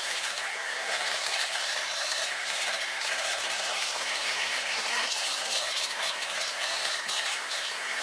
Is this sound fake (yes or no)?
yes